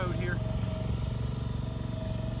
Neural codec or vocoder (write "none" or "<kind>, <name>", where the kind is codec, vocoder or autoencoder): none